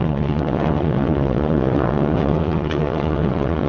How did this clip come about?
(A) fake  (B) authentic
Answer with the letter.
A